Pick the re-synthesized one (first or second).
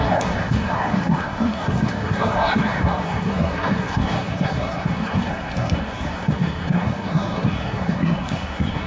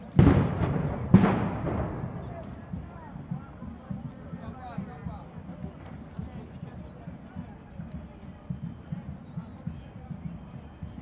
first